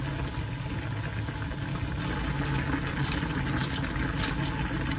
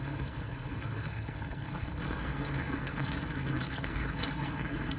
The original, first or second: first